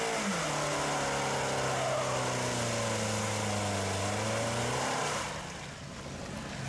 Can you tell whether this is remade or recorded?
recorded